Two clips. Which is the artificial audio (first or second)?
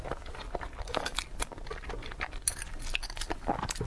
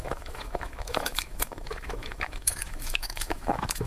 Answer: second